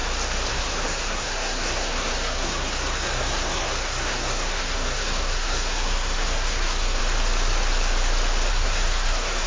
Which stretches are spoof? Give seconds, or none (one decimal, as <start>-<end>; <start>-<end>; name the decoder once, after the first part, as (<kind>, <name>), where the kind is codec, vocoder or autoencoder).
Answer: 0.5-7.0 (codec, SNAC); 8.5-9.5